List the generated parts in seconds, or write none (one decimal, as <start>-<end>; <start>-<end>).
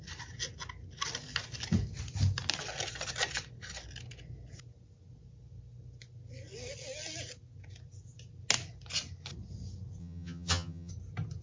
10.0-10.9